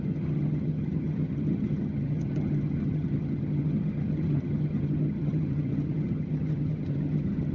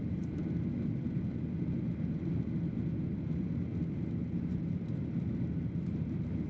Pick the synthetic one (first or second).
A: first